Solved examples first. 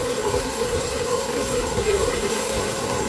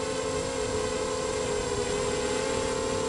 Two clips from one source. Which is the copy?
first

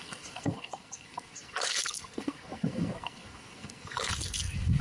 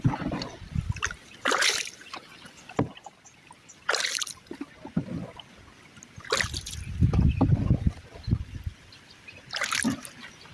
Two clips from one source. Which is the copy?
first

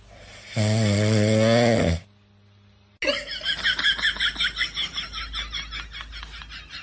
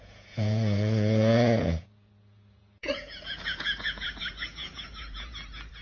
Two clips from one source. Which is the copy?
second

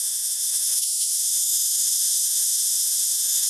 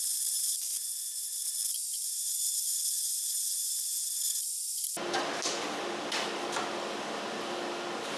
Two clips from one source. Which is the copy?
first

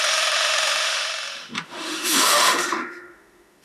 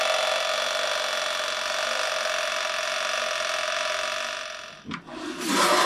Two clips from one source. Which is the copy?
first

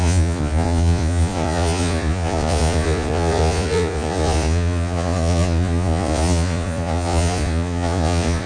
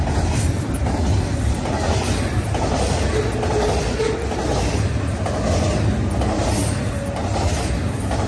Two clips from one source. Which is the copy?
first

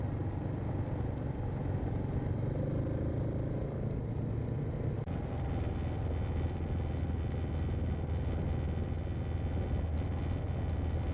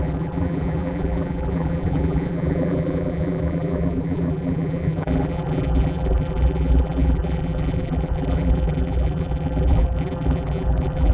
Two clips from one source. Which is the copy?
second